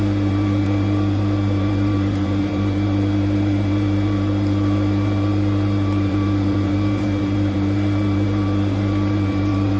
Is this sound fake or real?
fake